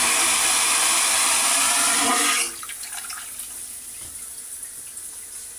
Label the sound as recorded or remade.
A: remade